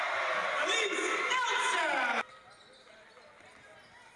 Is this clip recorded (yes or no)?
yes